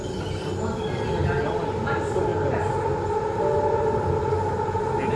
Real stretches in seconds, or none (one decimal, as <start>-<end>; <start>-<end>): 0.0-2.3; 3.3-5.2